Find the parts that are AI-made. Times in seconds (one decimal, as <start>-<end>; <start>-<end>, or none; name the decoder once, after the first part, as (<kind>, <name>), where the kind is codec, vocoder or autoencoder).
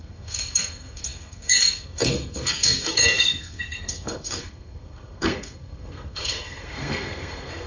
0.0-7.7 (codec, SNAC)